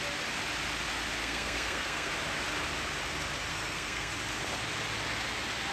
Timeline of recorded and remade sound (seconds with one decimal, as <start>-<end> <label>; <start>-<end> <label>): 0.0-1.2 recorded; 1.2-2.1 remade; 2.1-3.5 recorded; 3.5-4.1 remade; 4.1-5.7 recorded